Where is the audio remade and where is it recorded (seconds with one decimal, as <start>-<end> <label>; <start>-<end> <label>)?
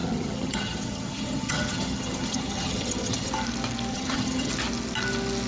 0.0-3.3 remade; 3.3-3.9 recorded; 3.9-4.5 remade; 4.5-5.5 recorded